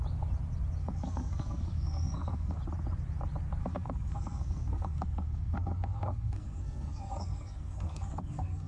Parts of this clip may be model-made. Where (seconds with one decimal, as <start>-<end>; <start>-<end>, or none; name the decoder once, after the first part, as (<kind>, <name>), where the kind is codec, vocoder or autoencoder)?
0.8-2.6 (codec, SNAC); 3.6-8.7